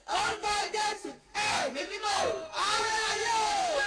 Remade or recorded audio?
remade